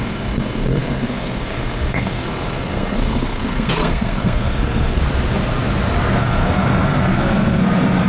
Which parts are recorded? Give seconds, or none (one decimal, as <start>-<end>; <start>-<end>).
5.0-6.2